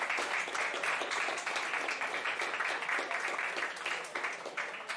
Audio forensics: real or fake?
real